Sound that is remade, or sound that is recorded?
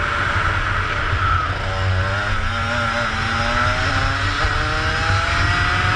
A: recorded